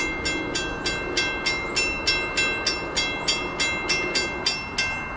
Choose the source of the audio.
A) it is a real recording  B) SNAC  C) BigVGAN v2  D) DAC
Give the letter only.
A